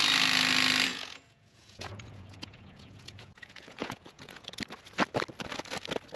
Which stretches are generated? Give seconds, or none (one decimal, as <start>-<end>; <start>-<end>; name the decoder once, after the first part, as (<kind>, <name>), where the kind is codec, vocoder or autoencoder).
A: 0.9-4.6 (vocoder, Vocos)